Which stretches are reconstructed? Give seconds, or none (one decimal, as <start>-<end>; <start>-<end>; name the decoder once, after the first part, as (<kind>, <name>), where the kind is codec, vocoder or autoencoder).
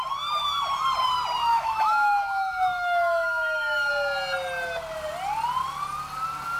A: 1.5-3.9 (autoencoder, DAC-VAE)